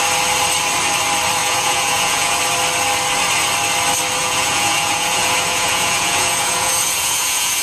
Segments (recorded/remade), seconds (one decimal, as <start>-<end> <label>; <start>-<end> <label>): 0.0-1.4 recorded; 1.4-2.4 remade; 2.4-4.2 recorded; 4.2-7.6 remade